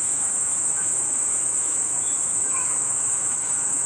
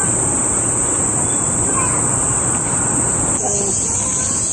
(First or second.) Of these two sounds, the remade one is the first